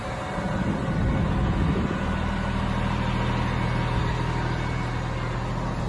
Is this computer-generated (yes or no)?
no